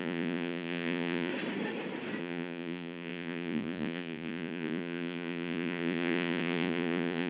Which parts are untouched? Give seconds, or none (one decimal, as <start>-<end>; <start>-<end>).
1.3-2.2